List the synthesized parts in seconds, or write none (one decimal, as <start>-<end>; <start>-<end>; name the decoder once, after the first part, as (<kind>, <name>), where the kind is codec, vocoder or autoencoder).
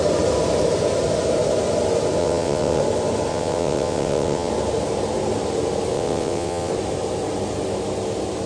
2.2-2.8 (vocoder, WaveNeXt); 3.3-4.5; 5.9-6.7